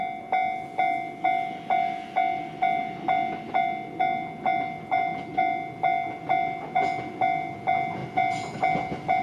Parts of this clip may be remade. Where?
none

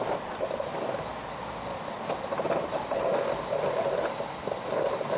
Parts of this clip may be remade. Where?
none

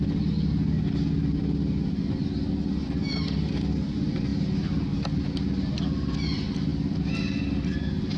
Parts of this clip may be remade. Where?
none

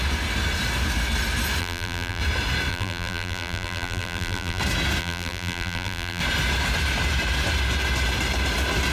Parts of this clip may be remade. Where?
1.6-2.2 (vocoder, BigVGAN v2); 2.7-4.6; 5.0-6.2